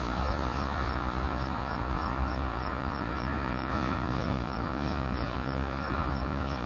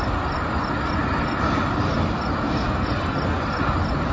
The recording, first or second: second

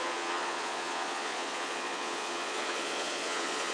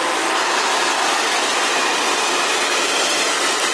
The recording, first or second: second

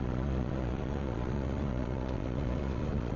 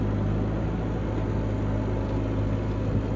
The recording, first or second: second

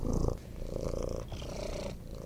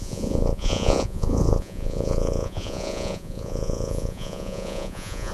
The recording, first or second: first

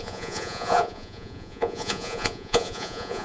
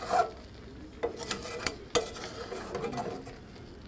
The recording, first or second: second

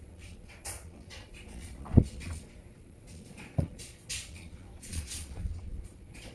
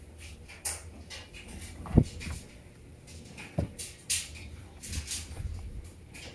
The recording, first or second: second